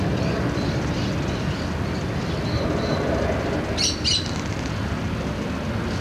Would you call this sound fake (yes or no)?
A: no